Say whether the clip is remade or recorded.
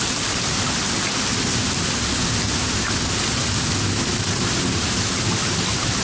recorded